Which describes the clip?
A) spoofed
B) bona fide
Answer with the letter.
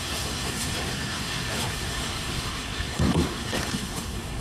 A